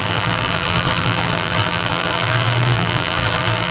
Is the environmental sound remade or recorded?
remade